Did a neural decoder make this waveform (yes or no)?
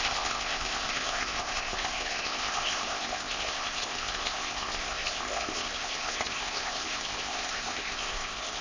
yes